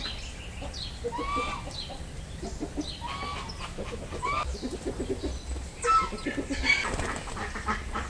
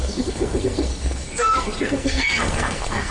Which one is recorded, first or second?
first